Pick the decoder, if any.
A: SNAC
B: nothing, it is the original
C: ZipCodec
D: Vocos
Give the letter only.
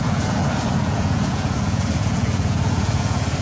D